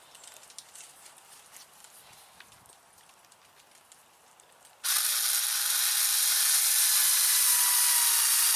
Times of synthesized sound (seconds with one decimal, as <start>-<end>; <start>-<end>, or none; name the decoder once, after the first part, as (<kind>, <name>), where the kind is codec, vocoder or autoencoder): none